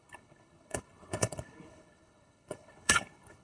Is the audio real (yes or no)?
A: no